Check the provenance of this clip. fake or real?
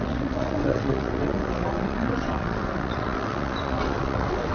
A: fake